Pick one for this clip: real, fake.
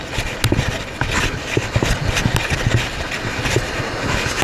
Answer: real